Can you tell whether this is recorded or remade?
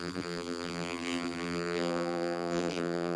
remade